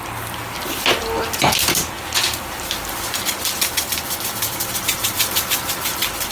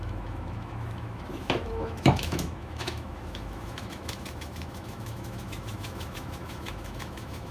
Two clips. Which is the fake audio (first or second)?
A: second